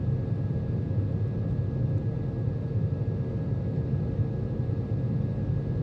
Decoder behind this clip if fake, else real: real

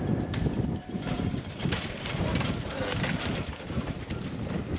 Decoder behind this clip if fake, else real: fake, vocoder, BigVGAN v2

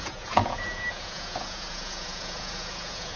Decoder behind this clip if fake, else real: fake, vocoder, Vocos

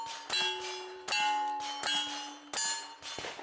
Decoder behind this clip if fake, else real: real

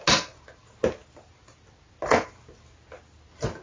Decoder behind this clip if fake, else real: real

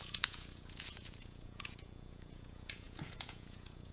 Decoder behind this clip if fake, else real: fake, vocoder, Vocos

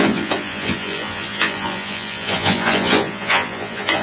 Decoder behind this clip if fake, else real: fake, vocoder, Vocos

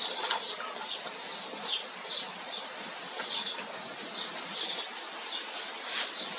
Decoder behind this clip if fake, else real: real